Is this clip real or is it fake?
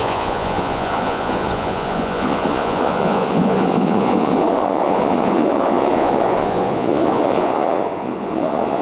fake